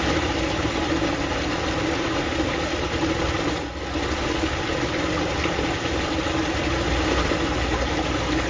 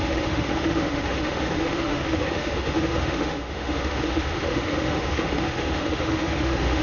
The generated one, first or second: second